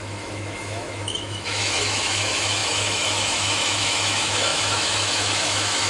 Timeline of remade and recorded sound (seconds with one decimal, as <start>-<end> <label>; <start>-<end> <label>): 0.0-5.9 remade